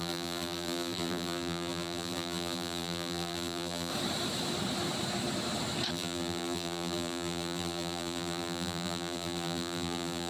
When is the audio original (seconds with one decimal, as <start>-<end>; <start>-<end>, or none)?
3.9-5.9